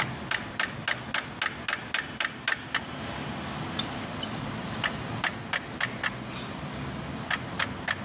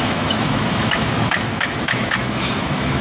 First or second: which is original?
first